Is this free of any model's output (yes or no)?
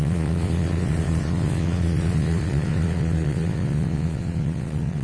no